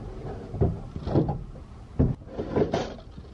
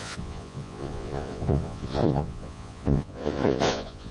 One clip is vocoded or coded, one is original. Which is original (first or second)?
first